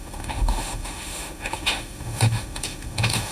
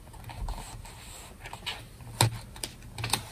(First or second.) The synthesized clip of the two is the first